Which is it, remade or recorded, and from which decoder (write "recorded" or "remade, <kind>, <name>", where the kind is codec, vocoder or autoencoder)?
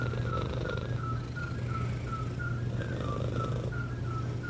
remade, vocoder, BigVGAN v2